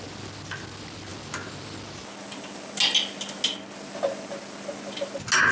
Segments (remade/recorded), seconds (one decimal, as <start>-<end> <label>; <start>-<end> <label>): 0.0-5.5 recorded